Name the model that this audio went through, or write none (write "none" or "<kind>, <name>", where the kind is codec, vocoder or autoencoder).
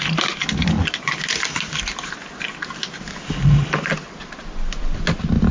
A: none